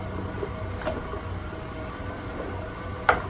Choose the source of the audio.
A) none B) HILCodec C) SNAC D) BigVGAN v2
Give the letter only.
A